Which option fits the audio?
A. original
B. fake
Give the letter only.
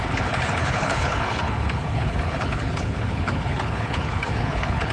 B